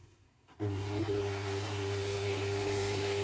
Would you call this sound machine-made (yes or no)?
yes